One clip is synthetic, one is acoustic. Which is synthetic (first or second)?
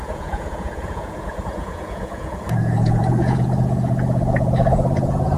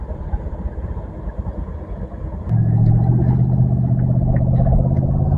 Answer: first